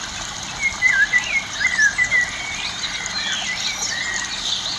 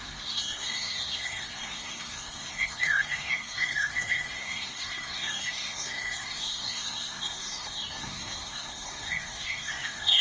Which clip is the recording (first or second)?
first